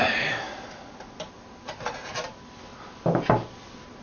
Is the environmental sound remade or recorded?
recorded